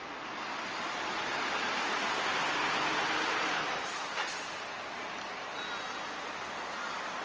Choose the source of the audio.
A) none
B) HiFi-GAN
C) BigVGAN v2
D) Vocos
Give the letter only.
A